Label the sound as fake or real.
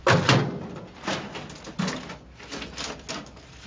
real